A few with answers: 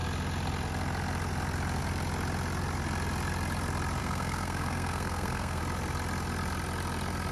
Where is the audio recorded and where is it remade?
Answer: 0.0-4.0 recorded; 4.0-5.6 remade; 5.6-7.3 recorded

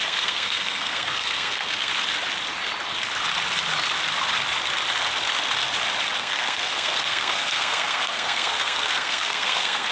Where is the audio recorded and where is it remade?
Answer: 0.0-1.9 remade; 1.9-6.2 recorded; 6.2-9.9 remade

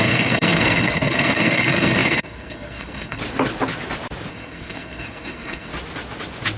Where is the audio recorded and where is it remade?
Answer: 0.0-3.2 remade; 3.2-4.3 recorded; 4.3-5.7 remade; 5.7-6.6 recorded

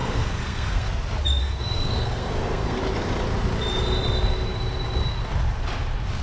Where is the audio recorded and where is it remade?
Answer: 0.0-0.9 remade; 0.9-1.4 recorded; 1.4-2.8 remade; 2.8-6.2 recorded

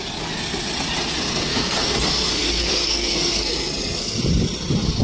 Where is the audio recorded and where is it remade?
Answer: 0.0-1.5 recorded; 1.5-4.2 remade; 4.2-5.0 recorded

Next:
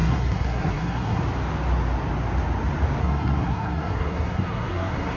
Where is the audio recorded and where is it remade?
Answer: 0.0-1.2 remade; 1.2-3.0 recorded; 3.0-5.2 remade

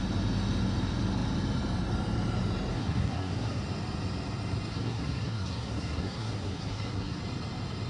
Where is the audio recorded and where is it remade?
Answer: 0.0-2.7 recorded; 2.7-3.6 remade; 3.6-4.7 recorded; 4.7-7.2 remade; 7.2-7.9 recorded